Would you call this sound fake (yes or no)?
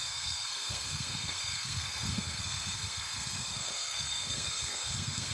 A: yes